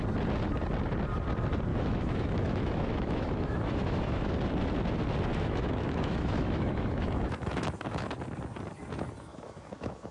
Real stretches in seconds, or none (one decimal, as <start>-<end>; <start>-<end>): 0.0-1.7; 4.3-5.3; 8.1-9.3